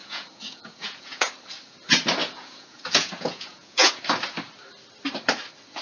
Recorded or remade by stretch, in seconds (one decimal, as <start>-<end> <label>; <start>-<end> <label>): 0.0-1.3 remade; 1.3-2.2 recorded; 2.2-3.9 remade; 3.9-5.8 recorded